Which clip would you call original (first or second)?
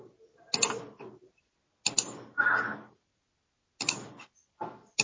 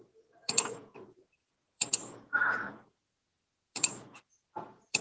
first